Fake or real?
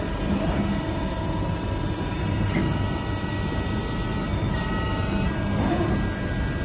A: real